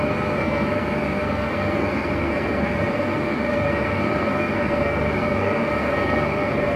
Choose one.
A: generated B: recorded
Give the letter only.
A